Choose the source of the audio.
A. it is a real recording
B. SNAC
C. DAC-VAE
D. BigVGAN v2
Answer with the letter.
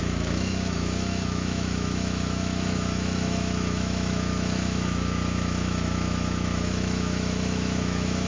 C